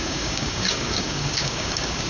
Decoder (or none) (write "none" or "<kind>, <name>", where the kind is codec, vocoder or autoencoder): codec, DAC